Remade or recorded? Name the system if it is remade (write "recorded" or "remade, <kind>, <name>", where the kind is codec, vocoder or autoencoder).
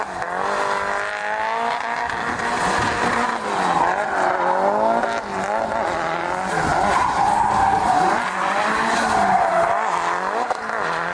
recorded